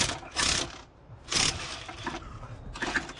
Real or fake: fake